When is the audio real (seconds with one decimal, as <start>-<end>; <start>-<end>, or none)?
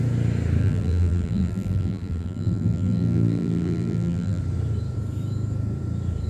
0.0-0.6; 4.4-6.3